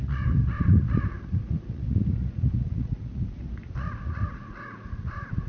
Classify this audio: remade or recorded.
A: remade